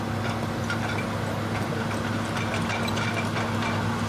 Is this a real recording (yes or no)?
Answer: yes